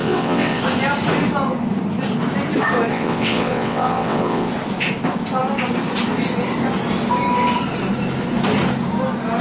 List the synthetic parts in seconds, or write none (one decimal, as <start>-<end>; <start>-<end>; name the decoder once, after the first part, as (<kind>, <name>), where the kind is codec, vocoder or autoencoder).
0.0-0.6 (vocoder, WaveNeXt); 2.9-4.5